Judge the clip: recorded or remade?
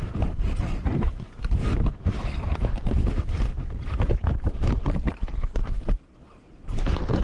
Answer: remade